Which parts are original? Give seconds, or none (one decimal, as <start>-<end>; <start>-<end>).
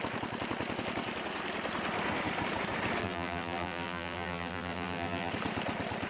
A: 0.0-3.0; 5.3-6.1